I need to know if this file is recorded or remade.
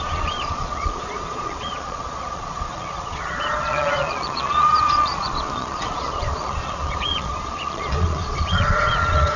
remade